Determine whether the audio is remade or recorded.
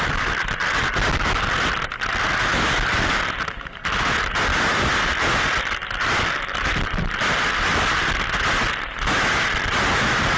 recorded